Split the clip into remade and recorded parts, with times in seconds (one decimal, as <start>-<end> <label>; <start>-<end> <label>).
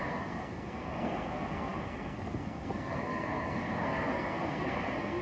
0.0-5.2 remade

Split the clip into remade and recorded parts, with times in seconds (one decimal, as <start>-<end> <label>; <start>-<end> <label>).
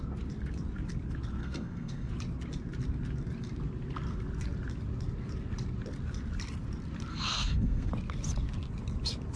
0.0-1.4 recorded; 1.4-2.1 remade; 2.1-7.1 recorded; 7.1-7.9 remade; 7.9-9.4 recorded